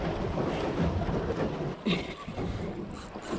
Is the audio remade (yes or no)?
no